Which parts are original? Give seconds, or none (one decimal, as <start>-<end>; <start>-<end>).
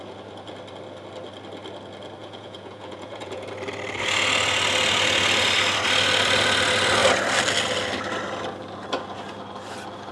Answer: 0.0-2.2; 3.5-10.1